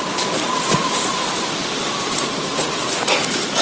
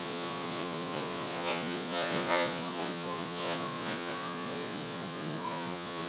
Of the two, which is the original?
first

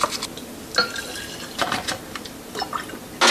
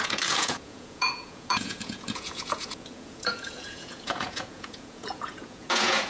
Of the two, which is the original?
first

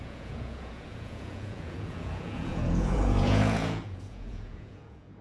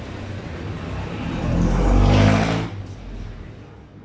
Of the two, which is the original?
second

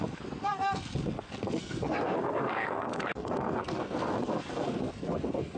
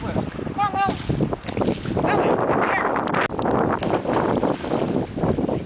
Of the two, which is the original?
second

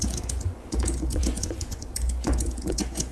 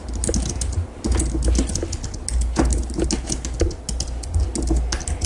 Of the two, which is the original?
second